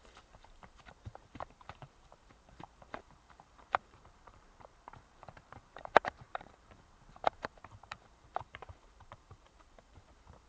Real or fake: fake